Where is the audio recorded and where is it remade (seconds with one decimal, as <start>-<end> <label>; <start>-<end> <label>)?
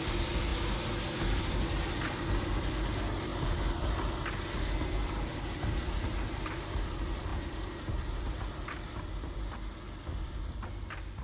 0.0-11.2 recorded